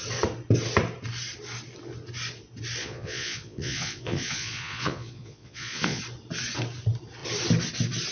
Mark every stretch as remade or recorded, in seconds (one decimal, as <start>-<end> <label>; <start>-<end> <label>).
0.0-2.8 recorded; 2.8-6.0 remade; 6.0-8.1 recorded